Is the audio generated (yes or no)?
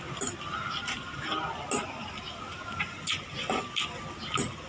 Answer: no